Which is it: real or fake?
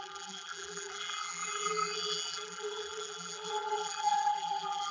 fake